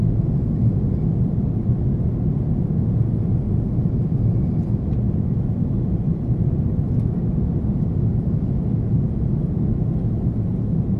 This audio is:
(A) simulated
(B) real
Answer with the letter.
B